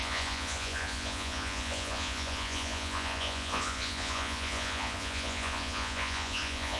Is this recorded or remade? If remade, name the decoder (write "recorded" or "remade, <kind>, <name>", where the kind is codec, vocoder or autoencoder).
remade, vocoder, Vocos